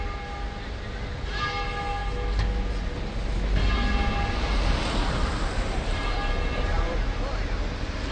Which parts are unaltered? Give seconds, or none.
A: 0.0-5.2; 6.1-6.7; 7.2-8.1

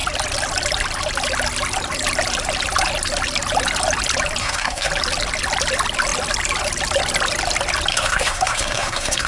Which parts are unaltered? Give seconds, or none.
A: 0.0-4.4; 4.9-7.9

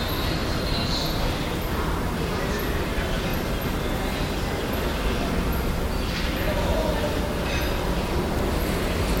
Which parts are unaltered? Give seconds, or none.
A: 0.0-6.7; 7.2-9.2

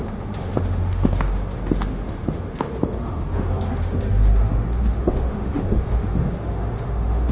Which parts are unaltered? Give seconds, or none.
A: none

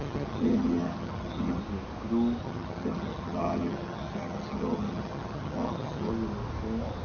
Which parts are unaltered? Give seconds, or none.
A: 1.6-2.4; 6.1-7.0

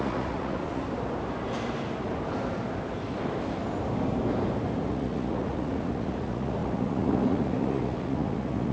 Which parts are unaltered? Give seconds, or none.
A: 0.8-4.9